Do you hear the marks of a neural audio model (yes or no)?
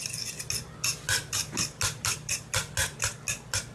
no